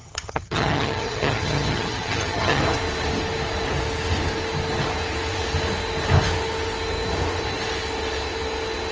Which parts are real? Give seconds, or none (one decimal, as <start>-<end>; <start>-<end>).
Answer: 2.6-8.9